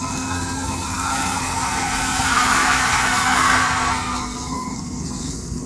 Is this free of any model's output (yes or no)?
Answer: no